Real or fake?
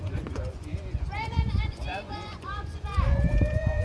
fake